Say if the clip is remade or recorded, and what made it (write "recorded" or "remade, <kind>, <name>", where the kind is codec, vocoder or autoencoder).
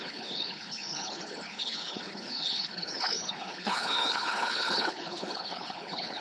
remade, codec, HILCodec